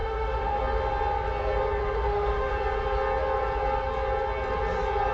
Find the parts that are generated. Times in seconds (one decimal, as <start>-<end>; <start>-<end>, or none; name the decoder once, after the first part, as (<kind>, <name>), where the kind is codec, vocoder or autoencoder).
0.0-0.6 (autoencoder, DAC-VAE); 1.8-2.5